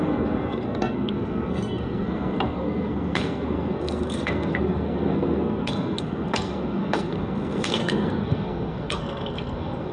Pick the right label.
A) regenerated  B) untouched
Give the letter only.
A